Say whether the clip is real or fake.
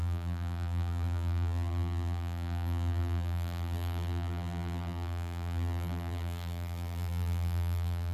fake